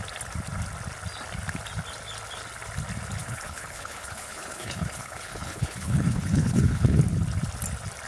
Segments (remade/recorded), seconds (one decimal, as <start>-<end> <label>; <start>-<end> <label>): 0.0-3.2 recorded; 3.2-7.0 remade; 7.0-8.1 recorded